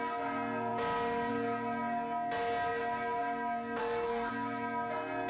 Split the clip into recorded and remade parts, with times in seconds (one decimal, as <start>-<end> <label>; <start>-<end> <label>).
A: 0.0-3.8 recorded; 3.8-4.3 remade; 4.3-5.3 recorded